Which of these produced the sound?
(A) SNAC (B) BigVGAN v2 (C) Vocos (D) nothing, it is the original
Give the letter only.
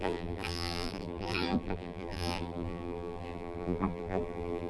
B